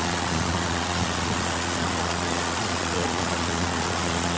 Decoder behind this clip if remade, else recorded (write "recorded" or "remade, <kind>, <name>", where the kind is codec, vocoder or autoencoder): remade, vocoder, Vocos